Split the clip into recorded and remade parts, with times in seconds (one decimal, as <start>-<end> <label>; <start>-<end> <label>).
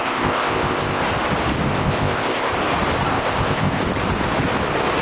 0.0-1.0 remade; 1.0-1.7 recorded; 1.7-2.5 remade; 2.5-3.1 recorded; 3.1-3.8 remade; 3.8-5.0 recorded